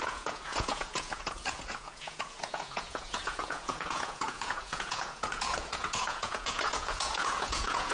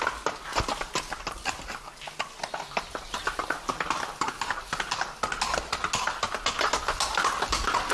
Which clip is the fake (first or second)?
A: first